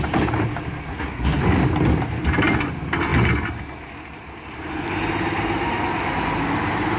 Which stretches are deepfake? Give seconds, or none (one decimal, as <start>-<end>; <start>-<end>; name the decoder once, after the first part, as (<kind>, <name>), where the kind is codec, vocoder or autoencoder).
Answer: 0.9-1.4 (codec, SNAC)